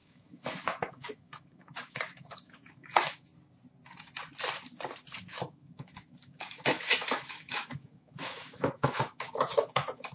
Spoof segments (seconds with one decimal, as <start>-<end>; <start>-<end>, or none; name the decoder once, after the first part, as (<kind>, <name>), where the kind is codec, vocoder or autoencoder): 0.0-3.3 (autoencoder, DAC-VAE); 5.2-10.1